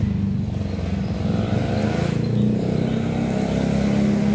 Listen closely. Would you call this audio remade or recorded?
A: recorded